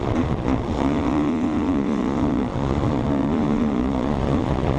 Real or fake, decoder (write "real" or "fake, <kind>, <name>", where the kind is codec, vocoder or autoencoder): fake, vocoder, Vocos